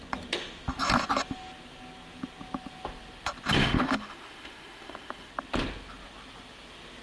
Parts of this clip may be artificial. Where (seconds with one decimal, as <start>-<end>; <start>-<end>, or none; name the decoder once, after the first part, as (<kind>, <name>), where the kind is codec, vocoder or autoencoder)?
3.6-5.3 (autoencoder, DAC-VAE)